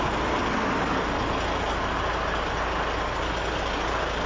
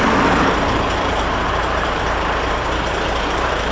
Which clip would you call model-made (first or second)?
second